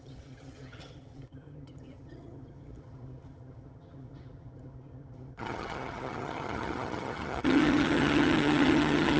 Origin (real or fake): fake